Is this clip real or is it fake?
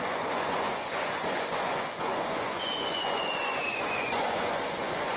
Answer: fake